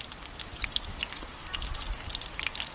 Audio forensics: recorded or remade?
recorded